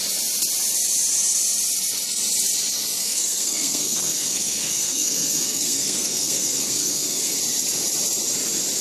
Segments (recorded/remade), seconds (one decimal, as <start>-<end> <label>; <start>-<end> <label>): 0.0-3.0 recorded; 3.0-7.4 remade; 7.4-8.8 recorded